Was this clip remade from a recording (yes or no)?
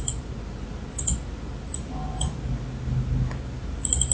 no